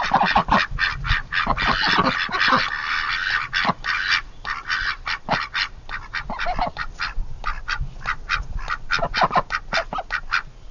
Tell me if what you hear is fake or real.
real